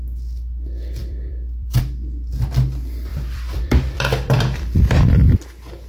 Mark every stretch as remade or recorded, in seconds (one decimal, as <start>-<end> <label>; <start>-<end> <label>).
0.0-1.0 recorded; 1.0-1.8 remade; 1.8-3.1 recorded; 3.1-5.0 remade; 5.0-5.9 recorded